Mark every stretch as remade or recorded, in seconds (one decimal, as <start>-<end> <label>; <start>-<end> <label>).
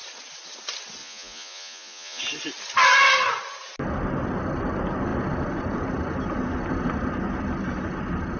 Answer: 0.0-1.0 recorded; 1.0-2.2 remade; 2.2-8.4 recorded